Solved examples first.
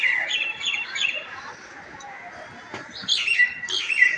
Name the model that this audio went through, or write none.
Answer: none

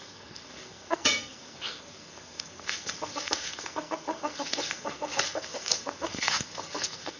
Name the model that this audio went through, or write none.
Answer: codec, SNAC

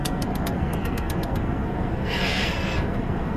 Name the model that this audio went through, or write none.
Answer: codec, SNAC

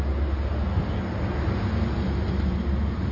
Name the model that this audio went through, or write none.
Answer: none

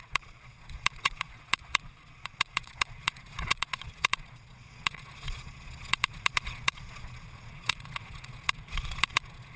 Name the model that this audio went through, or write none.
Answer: vocoder, Vocos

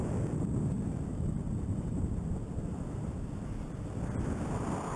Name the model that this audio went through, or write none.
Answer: vocoder, BigVGAN v2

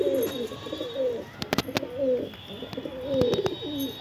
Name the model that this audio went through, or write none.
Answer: none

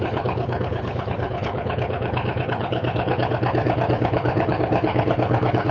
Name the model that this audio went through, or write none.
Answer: codec, HILCodec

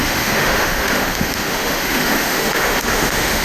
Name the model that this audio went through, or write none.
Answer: autoencoder, DAC-VAE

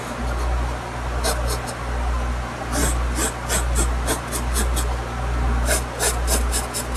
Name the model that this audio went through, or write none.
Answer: none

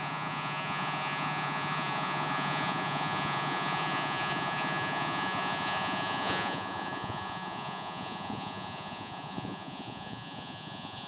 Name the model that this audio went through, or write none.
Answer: vocoder, Vocos